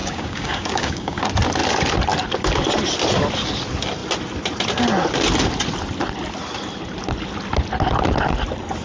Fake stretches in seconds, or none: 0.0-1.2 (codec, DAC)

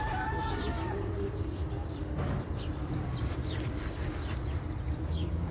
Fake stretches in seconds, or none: 0.0-1.6 (codec, DAC); 4.9-5.5

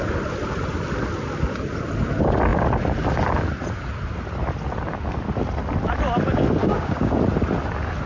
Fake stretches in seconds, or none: 6.6-7.1 (codec, DAC)

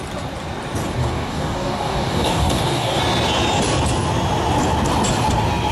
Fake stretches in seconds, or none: 1.0-3.0 (codec, DAC)

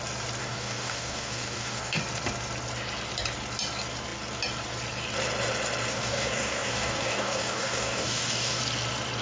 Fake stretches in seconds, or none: 0.4-2.0 (codec, DAC); 5.9-8.6